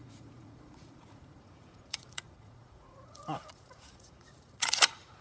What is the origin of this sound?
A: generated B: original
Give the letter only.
A